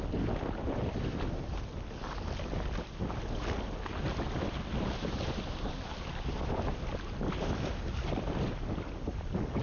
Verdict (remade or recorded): recorded